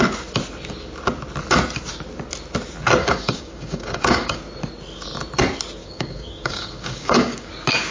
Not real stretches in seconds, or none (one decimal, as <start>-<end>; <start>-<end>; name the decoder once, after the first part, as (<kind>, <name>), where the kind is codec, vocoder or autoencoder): 3.0-4.4 (codec, DAC); 5.8-7.5